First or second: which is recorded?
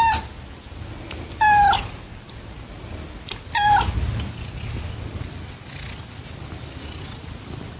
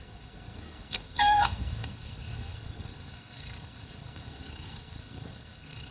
first